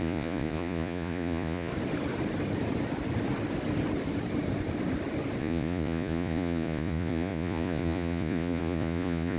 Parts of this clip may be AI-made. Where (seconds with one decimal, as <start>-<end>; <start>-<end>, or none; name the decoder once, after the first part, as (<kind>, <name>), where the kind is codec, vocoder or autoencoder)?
0.0-1.7 (vocoder, Vocos); 5.4-9.4